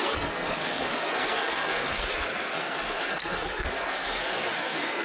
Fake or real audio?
fake